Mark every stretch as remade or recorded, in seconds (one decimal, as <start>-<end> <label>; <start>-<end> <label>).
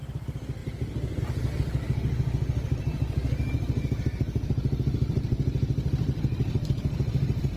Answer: 0.0-7.6 recorded